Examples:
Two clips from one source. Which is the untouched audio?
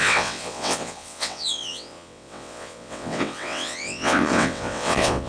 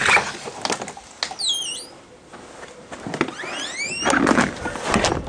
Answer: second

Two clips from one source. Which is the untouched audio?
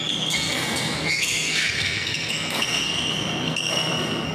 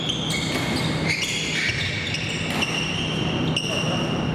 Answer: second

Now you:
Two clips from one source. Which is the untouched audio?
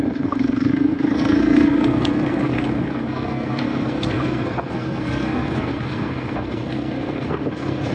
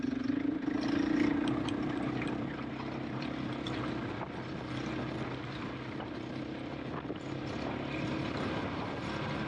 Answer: second